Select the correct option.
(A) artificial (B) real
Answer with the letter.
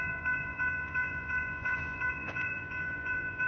A